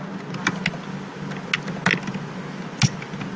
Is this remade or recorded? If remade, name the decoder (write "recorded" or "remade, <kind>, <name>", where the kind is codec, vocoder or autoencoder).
recorded